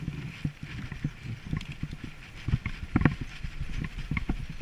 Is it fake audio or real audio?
real